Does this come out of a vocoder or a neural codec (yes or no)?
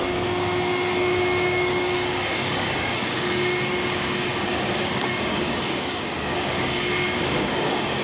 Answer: yes